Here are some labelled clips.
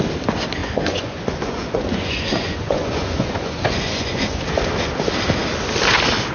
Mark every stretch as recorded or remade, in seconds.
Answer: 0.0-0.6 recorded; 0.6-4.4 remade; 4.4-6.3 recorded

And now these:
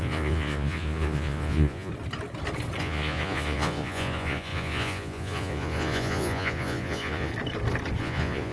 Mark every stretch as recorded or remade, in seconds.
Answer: 0.0-1.9 remade; 1.9-2.8 recorded; 2.8-7.3 remade; 7.3-8.0 recorded; 8.0-8.5 remade

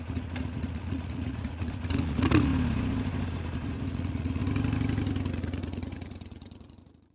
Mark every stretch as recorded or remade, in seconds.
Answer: 0.0-2.5 remade; 2.5-3.9 recorded; 3.9-4.4 remade; 4.4-5.3 recorded; 5.3-7.1 remade

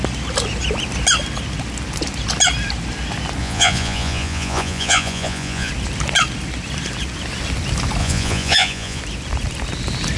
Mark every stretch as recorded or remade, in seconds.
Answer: 0.0-3.4 recorded; 3.4-5.7 remade; 5.7-8.0 recorded; 8.0-9.0 remade; 9.0-10.2 recorded

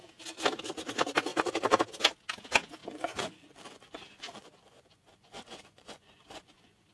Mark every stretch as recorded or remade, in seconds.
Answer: 0.0-2.8 recorded; 2.8-6.9 remade

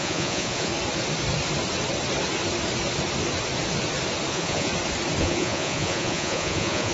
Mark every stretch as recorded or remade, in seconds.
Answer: 0.0-0.7 remade; 0.7-4.3 recorded; 4.3-4.7 remade; 4.7-5.2 recorded; 5.2-6.9 remade